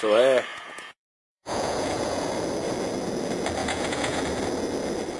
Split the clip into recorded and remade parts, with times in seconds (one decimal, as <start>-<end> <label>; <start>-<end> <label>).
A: 0.0-0.5 recorded; 0.5-2.3 remade; 2.3-3.6 recorded; 3.6-4.2 remade; 4.2-5.2 recorded